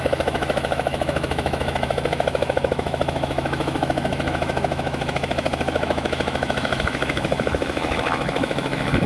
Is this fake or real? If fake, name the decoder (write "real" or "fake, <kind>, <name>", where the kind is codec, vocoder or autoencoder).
fake, autoencoder, DAC-VAE